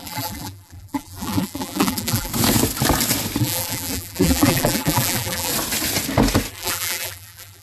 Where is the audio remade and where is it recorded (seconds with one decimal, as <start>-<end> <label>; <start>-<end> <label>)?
0.0-2.3 remade; 2.3-3.4 recorded; 3.4-5.5 remade; 5.5-6.5 recorded; 6.5-7.6 remade